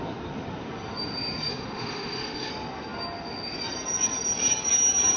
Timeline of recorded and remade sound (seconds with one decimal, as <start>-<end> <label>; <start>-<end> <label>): 0.0-1.5 recorded; 1.5-2.5 remade; 2.5-5.2 recorded